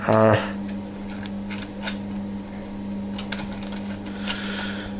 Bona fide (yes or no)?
yes